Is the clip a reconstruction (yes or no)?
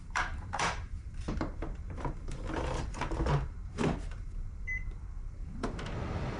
yes